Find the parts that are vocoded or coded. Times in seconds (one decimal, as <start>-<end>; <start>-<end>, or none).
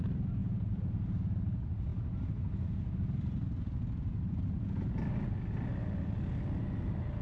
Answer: 0.4-1.0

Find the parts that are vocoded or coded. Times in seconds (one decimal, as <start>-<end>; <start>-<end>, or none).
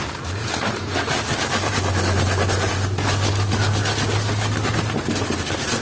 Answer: none